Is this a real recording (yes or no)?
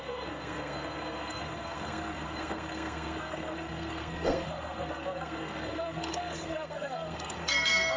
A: no